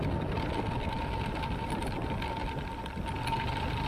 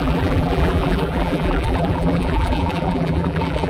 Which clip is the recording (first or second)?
first